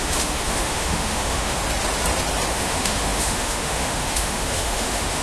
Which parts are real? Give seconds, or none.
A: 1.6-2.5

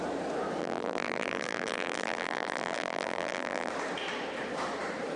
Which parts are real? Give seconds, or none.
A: 0.0-0.6; 3.7-5.2

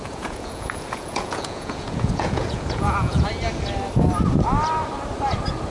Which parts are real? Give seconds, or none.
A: 3.3-5.7

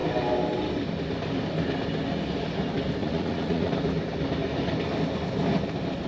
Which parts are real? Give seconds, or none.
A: 0.0-3.0; 3.7-6.1